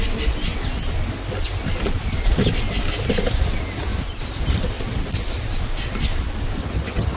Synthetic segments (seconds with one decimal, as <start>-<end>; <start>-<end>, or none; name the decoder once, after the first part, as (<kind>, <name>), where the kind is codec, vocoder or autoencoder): 6.6-7.2 (vocoder, HiFi-GAN)